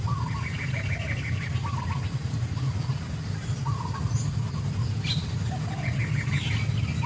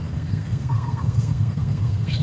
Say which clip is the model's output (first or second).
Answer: second